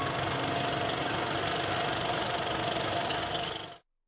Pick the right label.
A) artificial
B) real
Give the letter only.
B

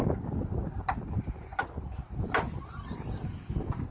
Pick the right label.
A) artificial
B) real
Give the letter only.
B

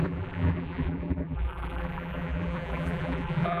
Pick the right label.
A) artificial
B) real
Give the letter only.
A